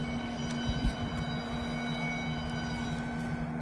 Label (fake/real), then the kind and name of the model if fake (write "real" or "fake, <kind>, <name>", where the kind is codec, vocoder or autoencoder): real